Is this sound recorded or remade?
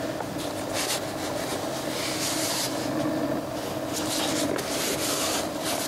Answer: recorded